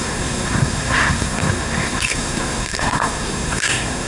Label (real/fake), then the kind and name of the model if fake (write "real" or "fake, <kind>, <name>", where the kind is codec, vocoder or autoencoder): fake, codec, SNAC